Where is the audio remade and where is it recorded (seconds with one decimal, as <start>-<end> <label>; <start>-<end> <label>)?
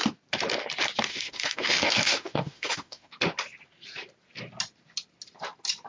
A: 0.0-1.1 recorded; 1.1-3.1 remade; 3.1-5.9 recorded